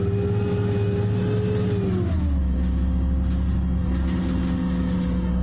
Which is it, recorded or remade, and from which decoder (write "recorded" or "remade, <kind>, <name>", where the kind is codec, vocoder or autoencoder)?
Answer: recorded